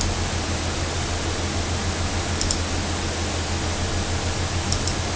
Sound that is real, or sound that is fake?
real